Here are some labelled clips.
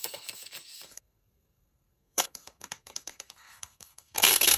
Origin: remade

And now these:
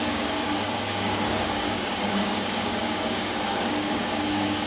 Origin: remade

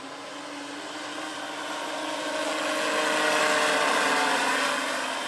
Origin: recorded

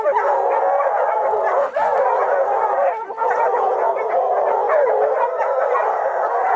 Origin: recorded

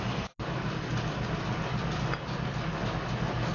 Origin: recorded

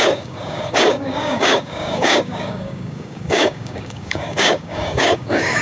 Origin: remade